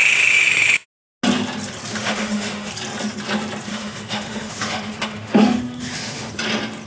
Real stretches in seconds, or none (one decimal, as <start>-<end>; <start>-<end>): 0.0-1.9; 2.7-3.7; 6.3-6.9